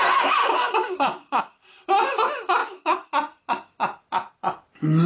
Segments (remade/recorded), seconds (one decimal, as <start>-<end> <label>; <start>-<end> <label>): 0.0-0.4 recorded; 0.4-1.4 remade; 1.4-2.6 recorded; 2.6-3.1 remade; 3.1-5.1 recorded

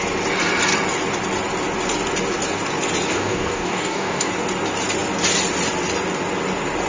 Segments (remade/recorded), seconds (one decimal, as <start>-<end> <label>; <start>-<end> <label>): 0.0-3.1 recorded; 3.1-4.3 remade; 4.3-6.9 recorded

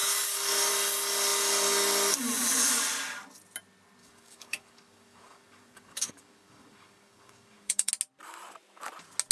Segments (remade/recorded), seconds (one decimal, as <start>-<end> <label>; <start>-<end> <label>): 0.0-0.7 remade; 0.7-4.0 recorded; 4.0-7.9 remade; 7.9-9.3 recorded

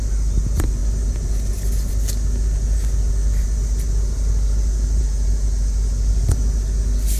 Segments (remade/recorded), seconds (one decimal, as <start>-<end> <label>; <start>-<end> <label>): 0.0-7.2 recorded

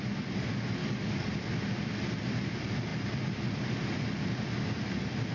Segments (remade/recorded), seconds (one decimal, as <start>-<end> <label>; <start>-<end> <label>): 0.0-0.8 recorded; 0.8-1.3 remade; 1.3-5.3 recorded